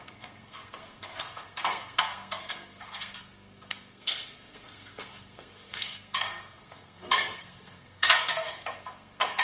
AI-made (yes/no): yes